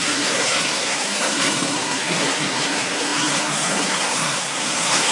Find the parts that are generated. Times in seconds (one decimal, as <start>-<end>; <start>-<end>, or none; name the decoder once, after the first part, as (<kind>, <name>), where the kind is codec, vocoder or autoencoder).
0.0-5.1 (codec, SNAC)